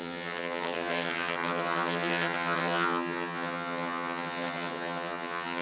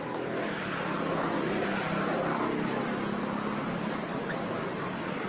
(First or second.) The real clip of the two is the second